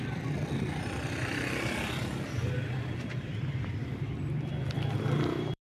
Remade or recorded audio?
remade